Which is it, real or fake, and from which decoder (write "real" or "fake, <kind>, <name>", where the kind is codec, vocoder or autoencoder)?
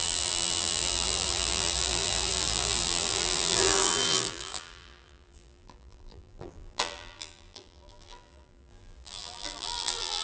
fake, vocoder, BigVGAN v2